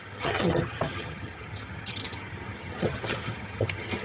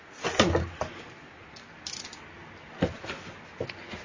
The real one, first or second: second